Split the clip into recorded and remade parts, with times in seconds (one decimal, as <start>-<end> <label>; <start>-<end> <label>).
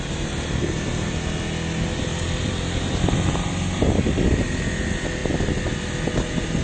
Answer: 0.0-6.6 recorded